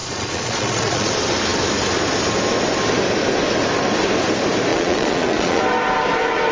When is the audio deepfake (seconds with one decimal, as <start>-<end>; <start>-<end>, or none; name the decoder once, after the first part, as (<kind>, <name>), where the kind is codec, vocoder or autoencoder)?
0.0-1.1 (vocoder, Vocos); 4.7-5.6